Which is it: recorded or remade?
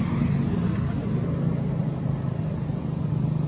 recorded